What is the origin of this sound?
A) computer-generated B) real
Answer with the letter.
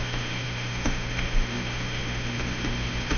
A